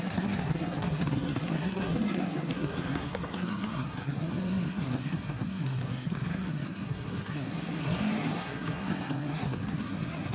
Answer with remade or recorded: remade